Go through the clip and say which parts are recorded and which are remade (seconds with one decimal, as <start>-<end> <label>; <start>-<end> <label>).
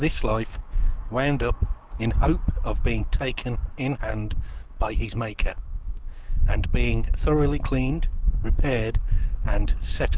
0.0-2.4 remade; 2.4-3.0 recorded; 3.0-3.4 remade; 3.4-4.0 recorded; 4.0-10.2 remade